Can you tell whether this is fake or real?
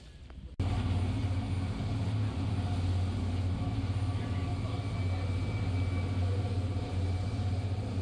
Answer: real